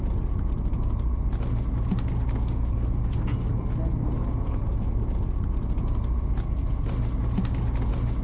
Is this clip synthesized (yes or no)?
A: no